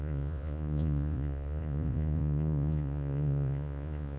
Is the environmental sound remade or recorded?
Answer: remade